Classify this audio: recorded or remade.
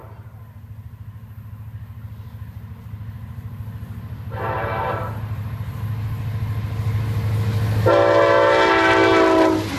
recorded